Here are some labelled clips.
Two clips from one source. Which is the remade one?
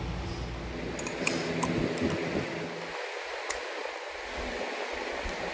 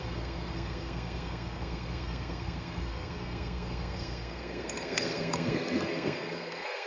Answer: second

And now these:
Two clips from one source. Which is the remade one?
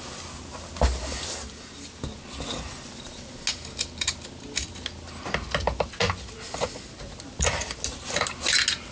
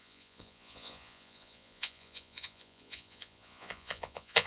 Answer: second